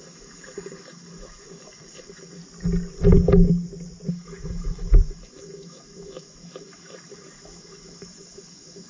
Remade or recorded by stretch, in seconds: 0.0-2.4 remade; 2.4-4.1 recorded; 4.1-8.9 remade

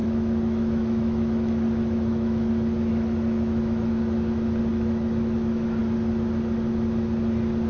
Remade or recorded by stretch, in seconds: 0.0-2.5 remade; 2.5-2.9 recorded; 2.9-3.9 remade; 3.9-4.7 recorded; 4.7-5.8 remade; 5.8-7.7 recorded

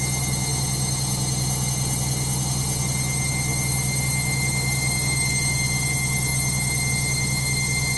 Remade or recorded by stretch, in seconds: 0.0-8.0 recorded

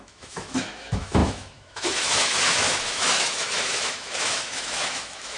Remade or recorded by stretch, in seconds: 0.0-5.4 remade

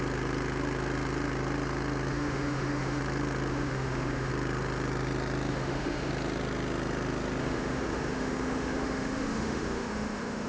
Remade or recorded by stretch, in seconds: 0.0-2.1 recorded; 2.1-3.0 remade; 3.0-3.5 recorded; 3.5-4.3 remade; 4.3-5.5 recorded; 5.5-6.1 remade; 6.1-7.4 recorded; 7.4-10.5 remade

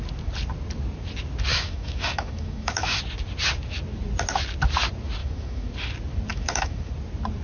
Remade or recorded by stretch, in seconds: 0.0-1.5 recorded; 1.5-3.0 remade; 3.0-5.2 recorded; 5.2-5.7 remade; 5.7-6.3 recorded; 6.3-6.9 remade; 6.9-7.4 recorded

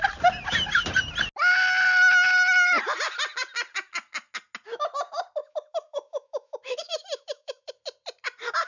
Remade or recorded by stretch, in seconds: 0.0-5.4 recorded; 5.4-7.7 remade; 7.7-8.7 recorded